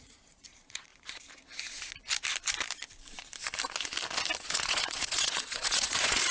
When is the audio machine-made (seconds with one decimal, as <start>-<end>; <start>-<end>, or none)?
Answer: 0.0-0.9; 4.4-6.3